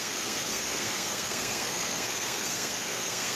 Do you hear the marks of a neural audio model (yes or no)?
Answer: yes